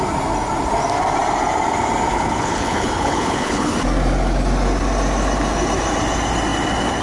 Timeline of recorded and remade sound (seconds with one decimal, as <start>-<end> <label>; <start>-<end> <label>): 0.0-2.1 recorded; 2.1-3.7 remade; 3.7-7.0 recorded